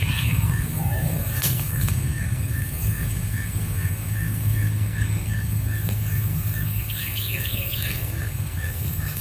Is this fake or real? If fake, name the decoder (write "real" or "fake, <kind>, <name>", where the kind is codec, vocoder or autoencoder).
fake, codec, SNAC